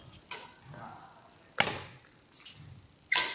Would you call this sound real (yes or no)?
yes